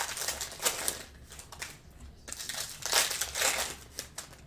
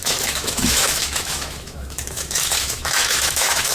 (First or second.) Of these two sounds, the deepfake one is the second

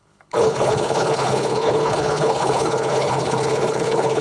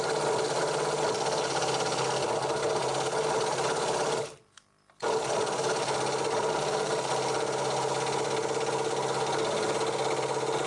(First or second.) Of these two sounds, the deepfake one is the first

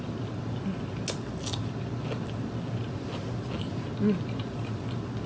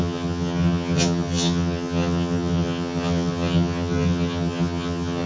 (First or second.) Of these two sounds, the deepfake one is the second